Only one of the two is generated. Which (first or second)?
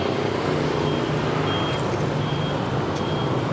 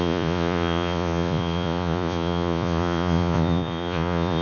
second